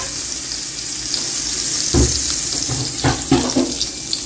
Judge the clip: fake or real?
real